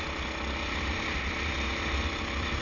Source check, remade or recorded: recorded